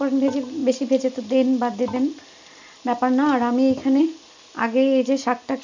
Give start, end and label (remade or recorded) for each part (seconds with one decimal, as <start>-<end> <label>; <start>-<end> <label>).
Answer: 0.0-5.6 recorded